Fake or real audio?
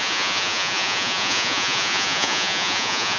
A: fake